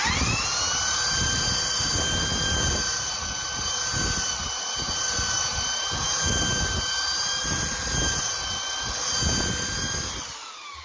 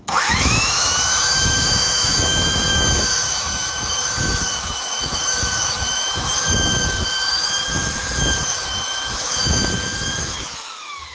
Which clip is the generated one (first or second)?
second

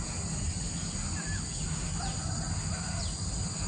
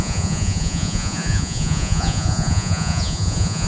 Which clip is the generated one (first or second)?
second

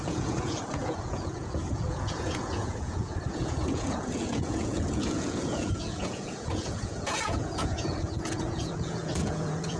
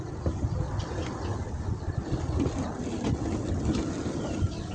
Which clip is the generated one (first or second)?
first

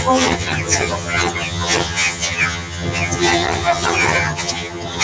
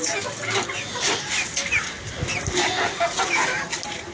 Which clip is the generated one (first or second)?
first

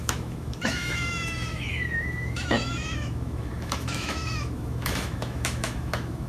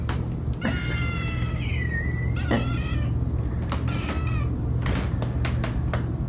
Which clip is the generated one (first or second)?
first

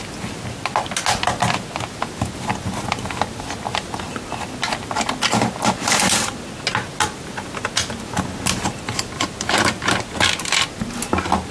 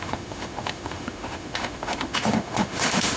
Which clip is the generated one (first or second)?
second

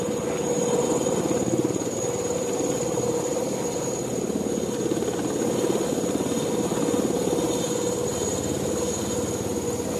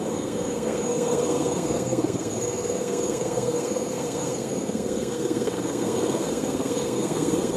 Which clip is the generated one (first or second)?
second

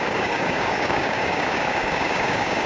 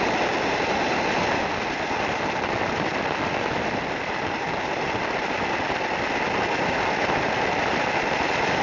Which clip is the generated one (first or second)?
first